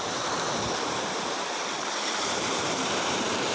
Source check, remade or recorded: remade